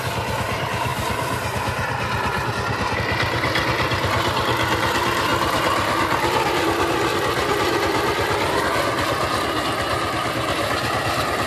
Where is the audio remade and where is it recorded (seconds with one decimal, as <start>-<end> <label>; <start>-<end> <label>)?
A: 0.0-5.3 recorded; 5.3-6.6 remade; 6.6-7.5 recorded; 7.5-8.6 remade; 8.6-11.5 recorded